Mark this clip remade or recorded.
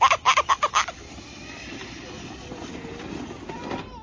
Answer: recorded